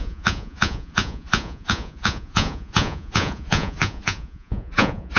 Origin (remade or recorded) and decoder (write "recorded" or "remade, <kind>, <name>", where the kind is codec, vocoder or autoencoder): remade, vocoder, Vocos